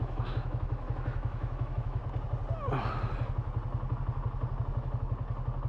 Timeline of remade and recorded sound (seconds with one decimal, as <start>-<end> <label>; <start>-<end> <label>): 0.0-2.0 remade; 2.0-5.7 recorded